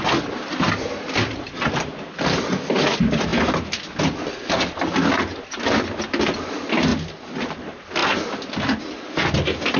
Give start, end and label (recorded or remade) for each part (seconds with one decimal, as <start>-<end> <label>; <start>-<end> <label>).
0.0-9.8 recorded